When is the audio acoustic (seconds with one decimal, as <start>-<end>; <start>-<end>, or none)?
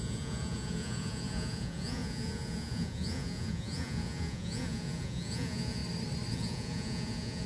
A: 5.8-6.3